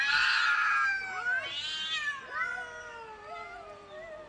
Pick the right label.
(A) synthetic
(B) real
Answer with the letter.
B